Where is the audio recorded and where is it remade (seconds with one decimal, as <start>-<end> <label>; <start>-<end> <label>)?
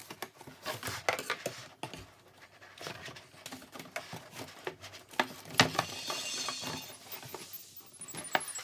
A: 0.0-8.6 recorded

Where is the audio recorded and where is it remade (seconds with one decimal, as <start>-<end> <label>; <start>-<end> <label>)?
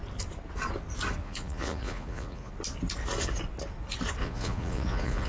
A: 0.0-1.2 recorded; 1.2-2.5 remade; 2.5-4.2 recorded; 4.2-5.3 remade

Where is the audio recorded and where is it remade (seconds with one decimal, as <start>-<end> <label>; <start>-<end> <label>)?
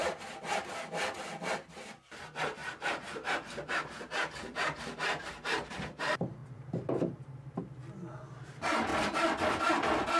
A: 0.0-2.6 recorded; 2.6-6.0 remade; 6.0-6.4 recorded; 6.4-7.6 remade; 7.6-10.2 recorded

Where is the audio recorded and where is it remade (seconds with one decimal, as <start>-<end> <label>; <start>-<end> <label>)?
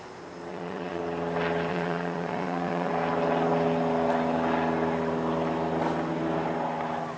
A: 0.0-0.5 recorded; 0.5-1.0 remade; 1.0-1.7 recorded; 1.7-2.9 remade; 2.9-7.2 recorded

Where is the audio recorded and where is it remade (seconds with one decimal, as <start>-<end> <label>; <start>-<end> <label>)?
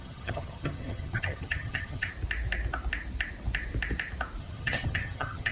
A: 0.0-2.1 remade; 2.1-4.4 recorded; 4.4-5.5 remade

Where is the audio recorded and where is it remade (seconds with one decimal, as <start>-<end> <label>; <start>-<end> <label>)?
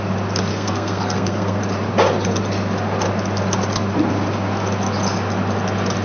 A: 0.0-0.5 recorded; 0.5-1.6 remade; 1.6-6.0 recorded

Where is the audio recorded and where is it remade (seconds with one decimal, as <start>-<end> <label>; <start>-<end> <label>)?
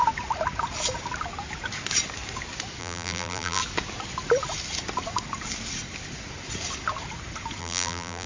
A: 0.0-2.8 recorded; 2.8-3.6 remade; 3.6-7.6 recorded; 7.6-8.3 remade